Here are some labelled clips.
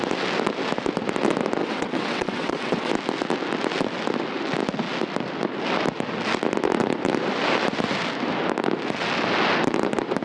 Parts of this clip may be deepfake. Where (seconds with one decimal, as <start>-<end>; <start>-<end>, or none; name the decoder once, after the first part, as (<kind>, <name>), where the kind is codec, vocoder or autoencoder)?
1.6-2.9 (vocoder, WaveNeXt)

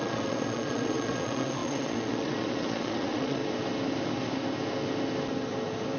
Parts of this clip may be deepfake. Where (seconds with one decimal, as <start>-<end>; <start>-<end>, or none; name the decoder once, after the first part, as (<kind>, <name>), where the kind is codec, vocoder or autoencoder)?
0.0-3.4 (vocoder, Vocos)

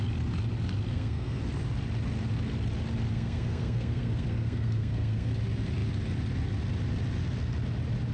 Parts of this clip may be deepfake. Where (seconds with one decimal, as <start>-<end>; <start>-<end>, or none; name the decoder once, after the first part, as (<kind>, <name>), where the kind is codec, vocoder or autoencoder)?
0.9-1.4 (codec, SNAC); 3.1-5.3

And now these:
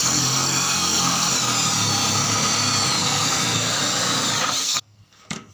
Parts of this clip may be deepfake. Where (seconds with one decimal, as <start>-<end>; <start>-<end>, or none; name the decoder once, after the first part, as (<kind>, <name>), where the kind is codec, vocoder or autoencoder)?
0.0-1.3 (codec, SNAC); 3.0-3.8; 4.6-5.5